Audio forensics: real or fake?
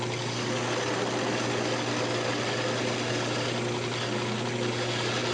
real